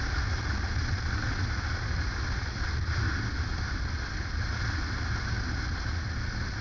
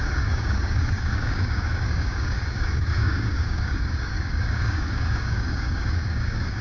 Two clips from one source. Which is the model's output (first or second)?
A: second